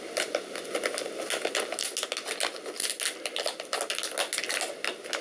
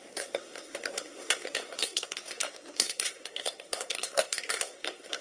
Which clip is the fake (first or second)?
second